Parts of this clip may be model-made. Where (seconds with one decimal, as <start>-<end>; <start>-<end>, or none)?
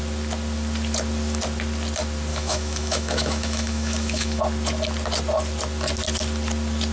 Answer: 2.3-4.4